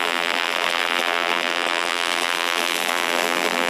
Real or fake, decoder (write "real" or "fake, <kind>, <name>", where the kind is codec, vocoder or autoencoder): fake, vocoder, BigVGAN v2